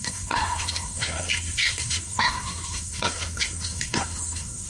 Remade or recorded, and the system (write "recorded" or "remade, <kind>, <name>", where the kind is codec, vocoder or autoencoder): remade, codec, SNAC